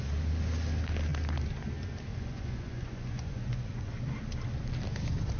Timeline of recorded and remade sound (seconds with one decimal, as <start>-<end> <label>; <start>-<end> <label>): 0.0-2.1 recorded; 2.1-3.9 remade; 3.9-5.4 recorded